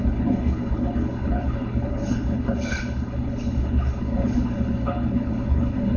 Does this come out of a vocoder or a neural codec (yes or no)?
yes